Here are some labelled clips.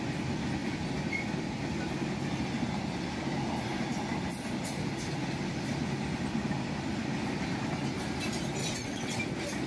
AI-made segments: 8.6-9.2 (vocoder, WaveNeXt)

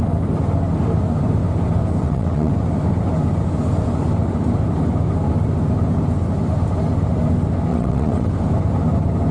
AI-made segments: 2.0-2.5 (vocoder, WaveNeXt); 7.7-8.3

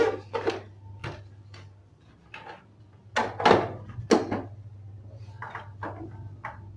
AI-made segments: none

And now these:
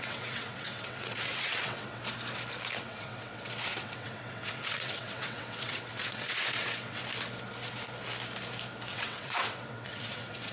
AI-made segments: 0.0-2.0 (vocoder, WaveNeXt); 2.8-7.0; 8.9-10.5